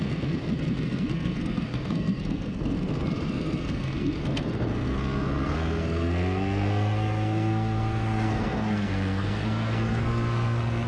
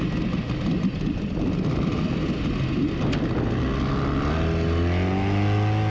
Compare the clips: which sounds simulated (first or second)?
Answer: first